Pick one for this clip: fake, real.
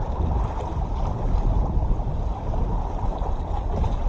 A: real